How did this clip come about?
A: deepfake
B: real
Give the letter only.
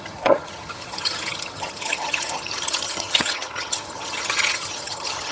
A